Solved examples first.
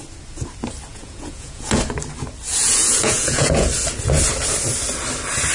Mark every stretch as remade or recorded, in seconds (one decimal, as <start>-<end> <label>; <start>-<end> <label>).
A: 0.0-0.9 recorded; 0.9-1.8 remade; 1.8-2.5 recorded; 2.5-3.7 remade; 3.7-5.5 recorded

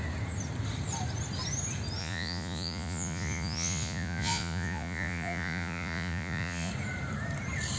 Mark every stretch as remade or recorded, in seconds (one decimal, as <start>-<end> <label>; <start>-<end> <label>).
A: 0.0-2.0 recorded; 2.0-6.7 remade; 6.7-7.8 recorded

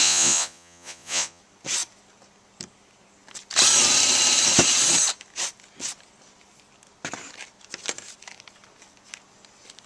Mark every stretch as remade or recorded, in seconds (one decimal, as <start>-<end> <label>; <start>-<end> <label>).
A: 0.0-1.4 remade; 1.4-9.9 recorded

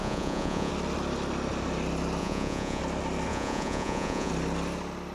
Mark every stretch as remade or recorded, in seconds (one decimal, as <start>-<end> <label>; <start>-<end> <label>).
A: 0.0-0.7 remade; 0.7-2.2 recorded; 2.2-2.8 remade; 2.8-3.3 recorded; 3.3-4.3 remade; 4.3-5.1 recorded

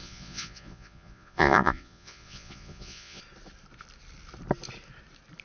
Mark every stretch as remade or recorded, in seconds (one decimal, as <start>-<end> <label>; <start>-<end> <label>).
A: 0.0-3.2 remade; 3.2-5.4 recorded

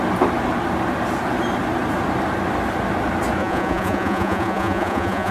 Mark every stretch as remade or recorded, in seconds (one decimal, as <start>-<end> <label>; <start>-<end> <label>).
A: 0.0-3.4 recorded; 3.4-5.3 remade

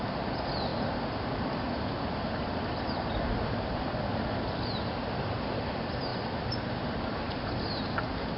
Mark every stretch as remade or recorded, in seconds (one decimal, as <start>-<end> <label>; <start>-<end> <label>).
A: 0.0-8.4 recorded